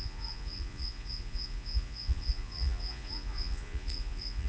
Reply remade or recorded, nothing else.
remade